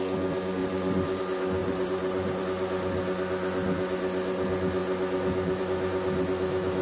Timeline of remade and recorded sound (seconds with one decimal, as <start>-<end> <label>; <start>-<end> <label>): 0.0-0.6 recorded; 0.6-1.2 remade; 1.2-1.6 recorded; 1.6-2.4 remade; 2.4-6.8 recorded